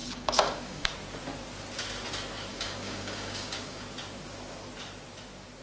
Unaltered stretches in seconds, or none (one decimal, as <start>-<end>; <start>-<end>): 0.9-2.5; 3.8-5.6